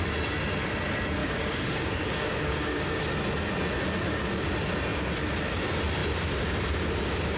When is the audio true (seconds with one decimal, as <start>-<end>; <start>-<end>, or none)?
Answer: 0.0-1.2; 3.0-7.4